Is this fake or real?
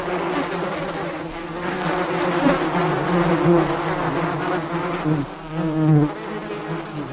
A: real